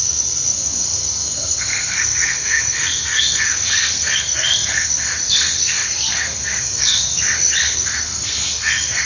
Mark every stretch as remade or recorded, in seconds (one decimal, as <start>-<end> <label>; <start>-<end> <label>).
0.0-9.1 remade